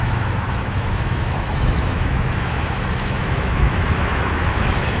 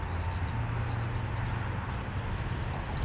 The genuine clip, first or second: second